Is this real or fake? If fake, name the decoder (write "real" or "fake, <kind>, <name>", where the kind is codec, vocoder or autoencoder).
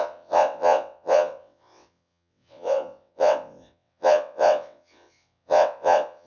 fake, vocoder, WaveNeXt